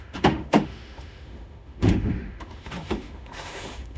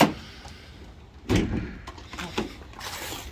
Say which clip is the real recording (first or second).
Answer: second